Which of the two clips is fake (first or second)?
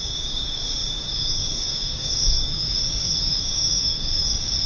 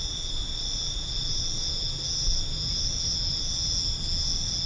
first